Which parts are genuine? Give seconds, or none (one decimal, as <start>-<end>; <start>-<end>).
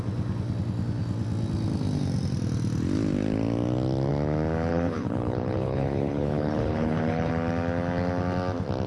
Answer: 0.0-4.7; 7.3-8.9